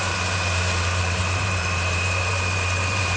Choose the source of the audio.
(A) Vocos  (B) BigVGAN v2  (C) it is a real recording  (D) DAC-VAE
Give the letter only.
B